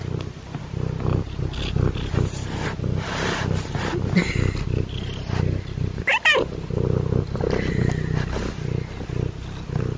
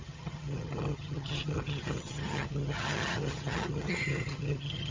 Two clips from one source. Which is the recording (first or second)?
first